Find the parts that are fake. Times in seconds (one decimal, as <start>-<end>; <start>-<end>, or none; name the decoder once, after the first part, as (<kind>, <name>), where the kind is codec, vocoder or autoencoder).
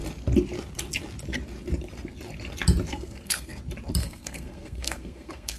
2.9-3.6 (codec, SNAC); 4.0-5.6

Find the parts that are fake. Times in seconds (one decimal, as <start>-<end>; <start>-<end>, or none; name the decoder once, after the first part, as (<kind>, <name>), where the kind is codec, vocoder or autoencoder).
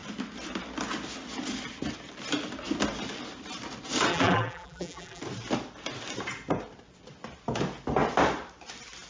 4.1-5.2 (vocoder, BigVGAN v2)